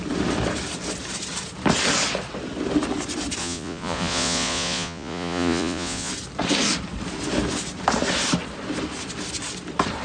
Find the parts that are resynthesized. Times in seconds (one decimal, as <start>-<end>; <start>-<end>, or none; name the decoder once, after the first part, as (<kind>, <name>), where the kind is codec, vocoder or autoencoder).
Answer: 3.4-6.1 (vocoder, Vocos)

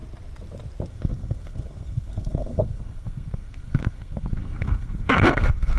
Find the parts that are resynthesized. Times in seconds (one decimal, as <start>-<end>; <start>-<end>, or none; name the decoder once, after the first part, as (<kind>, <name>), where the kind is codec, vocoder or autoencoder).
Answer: 0.9-5.8 (codec, SNAC)

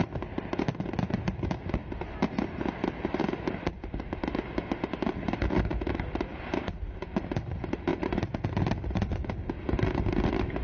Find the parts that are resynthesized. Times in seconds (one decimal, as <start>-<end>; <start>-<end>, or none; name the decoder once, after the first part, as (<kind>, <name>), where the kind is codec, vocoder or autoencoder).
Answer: 1.8-6.4 (vocoder, BigVGAN v2)

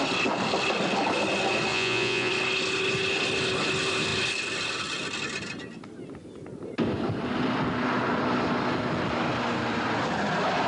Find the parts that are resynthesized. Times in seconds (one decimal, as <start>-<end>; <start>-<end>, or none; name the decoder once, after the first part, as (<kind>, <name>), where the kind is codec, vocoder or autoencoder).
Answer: 1.7-2.3 (vocoder, Vocos)

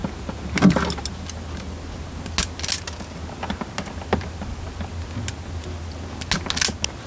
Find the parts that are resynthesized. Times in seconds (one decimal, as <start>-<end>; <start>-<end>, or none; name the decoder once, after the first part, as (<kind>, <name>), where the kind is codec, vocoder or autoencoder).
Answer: none

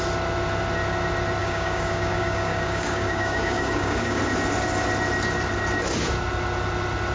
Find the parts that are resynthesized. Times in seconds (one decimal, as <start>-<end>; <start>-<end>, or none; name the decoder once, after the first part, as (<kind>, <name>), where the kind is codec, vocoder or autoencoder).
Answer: 1.4-4.2 (codec, DAC)

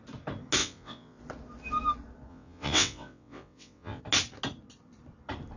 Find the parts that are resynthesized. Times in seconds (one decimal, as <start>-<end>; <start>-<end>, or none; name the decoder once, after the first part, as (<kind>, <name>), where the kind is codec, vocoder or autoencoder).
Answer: 0.6-1.2 (vocoder, WaveNeXt); 2.3-4.0

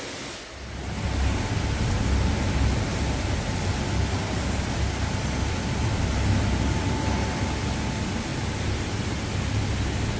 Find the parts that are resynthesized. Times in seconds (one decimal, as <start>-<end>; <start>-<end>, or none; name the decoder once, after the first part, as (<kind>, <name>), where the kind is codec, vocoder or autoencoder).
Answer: none